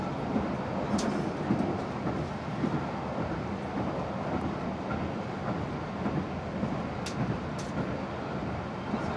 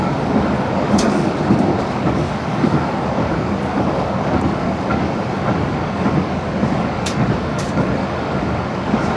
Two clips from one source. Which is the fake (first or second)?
second